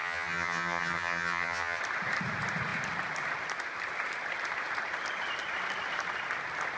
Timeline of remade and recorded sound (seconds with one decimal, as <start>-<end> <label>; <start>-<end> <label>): 0.0-1.8 remade; 1.8-6.8 recorded